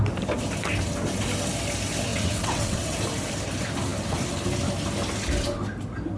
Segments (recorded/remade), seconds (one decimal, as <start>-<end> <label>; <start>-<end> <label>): 0.0-2.1 recorded; 2.1-3.0 remade; 3.0-6.2 recorded